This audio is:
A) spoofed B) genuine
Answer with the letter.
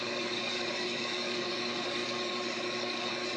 A